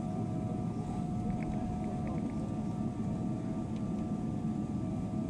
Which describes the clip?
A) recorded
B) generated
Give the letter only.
B